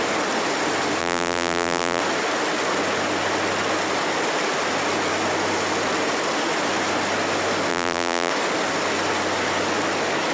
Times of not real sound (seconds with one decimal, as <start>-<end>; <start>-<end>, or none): 1.0-2.0; 7.7-8.3